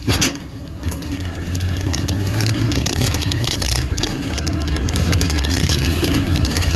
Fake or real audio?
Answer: fake